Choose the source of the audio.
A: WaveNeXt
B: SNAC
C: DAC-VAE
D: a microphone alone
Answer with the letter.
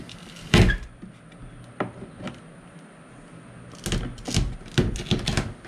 D